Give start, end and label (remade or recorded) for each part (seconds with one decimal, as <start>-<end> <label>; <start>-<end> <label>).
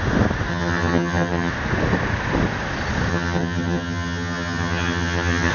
0.0-0.5 recorded; 0.5-1.5 remade; 1.5-3.1 recorded; 3.1-5.5 remade